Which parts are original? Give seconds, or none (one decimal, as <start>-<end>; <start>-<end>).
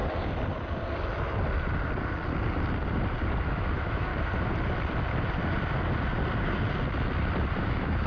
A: 0.0-3.5; 4.1-7.6